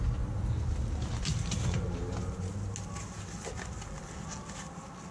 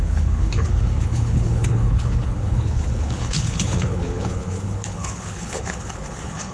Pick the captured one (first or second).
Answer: first